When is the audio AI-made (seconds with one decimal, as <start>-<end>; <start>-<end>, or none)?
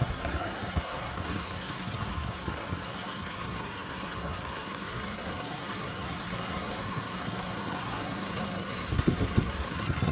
0.0-10.1